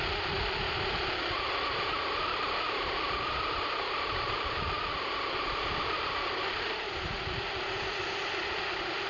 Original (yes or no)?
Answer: yes